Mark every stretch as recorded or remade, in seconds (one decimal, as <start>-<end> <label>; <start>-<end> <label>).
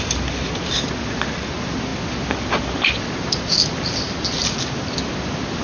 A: 0.0-5.6 recorded